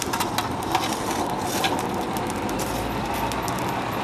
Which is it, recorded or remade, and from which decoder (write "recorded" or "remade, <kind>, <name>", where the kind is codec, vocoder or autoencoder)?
recorded